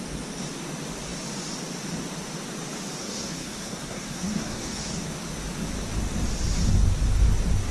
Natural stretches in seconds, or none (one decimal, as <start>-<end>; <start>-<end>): 0.0-3.0; 4.8-7.7